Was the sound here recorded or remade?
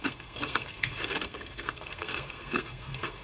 remade